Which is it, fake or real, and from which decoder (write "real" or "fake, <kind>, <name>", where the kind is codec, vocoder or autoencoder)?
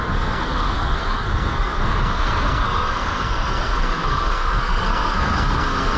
fake, codec, SNAC